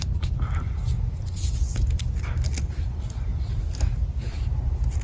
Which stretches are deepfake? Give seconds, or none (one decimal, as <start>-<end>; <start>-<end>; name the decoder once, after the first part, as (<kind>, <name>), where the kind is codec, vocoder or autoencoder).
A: 3.3-5.0 (vocoder, BigVGAN v2)

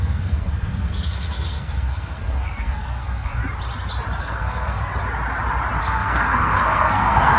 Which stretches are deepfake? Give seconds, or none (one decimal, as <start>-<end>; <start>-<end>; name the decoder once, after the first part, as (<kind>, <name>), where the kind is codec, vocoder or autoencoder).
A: 0.0-3.4 (codec, SNAC); 4.2-4.9; 5.8-7.4